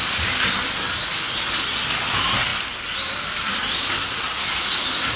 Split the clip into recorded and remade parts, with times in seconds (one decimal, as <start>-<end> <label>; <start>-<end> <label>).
0.0-5.2 recorded